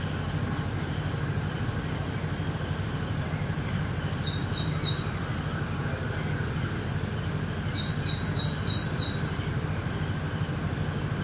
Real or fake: real